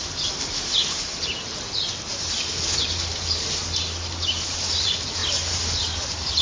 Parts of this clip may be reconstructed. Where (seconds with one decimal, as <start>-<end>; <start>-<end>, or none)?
0.0-0.8; 2.8-5.2